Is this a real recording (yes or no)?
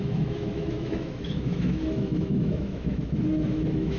no